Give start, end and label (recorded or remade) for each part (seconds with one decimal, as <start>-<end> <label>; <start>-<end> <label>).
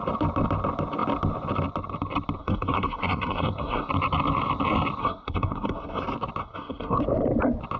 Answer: 0.0-2.4 recorded; 2.4-3.9 remade; 3.9-5.0 recorded; 5.0-6.0 remade; 6.0-6.4 recorded; 6.4-7.0 remade; 7.0-7.8 recorded